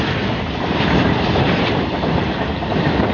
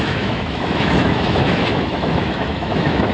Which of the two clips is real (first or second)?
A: first